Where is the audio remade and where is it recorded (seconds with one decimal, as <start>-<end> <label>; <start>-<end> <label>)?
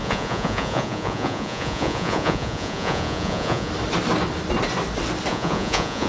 0.0-3.7 remade; 3.7-5.3 recorded; 5.3-6.1 remade